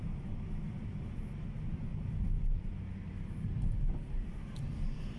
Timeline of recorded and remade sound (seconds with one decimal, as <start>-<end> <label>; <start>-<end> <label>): 0.0-1.9 recorded; 1.9-5.2 remade